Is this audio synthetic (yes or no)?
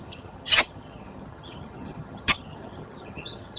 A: yes